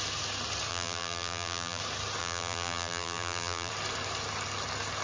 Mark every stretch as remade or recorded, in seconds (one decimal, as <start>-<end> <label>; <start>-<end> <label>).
0.0-0.7 recorded; 0.7-1.8 remade; 1.8-2.2 recorded; 2.2-3.7 remade; 3.7-5.0 recorded